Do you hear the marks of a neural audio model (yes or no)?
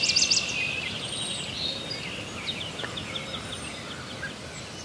no